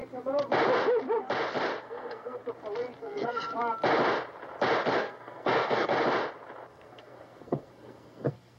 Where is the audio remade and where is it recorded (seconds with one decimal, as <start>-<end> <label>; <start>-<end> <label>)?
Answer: 0.0-1.8 recorded; 1.8-2.4 remade; 2.4-3.0 recorded; 3.0-3.5 remade; 3.5-5.0 recorded; 5.0-5.9 remade; 5.9-6.7 recorded; 6.7-8.6 remade